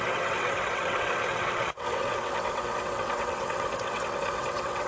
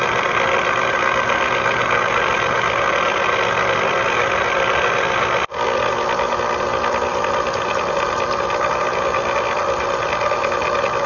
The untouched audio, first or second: second